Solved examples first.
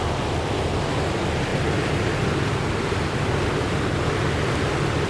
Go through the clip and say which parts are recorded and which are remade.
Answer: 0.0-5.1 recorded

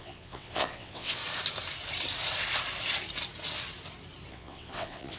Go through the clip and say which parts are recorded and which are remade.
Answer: 0.0-1.2 remade; 1.2-4.3 recorded; 4.3-5.2 remade

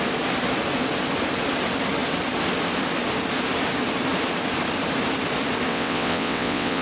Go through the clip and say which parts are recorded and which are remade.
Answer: 0.0-5.7 recorded; 5.7-6.8 remade

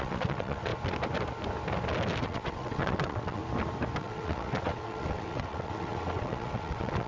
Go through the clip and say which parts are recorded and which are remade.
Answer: 0.0-0.7 remade; 0.7-2.2 recorded; 2.2-3.4 remade; 3.4-4.0 recorded; 4.0-7.1 remade